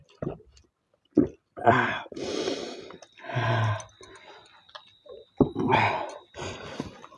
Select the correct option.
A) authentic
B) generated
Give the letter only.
A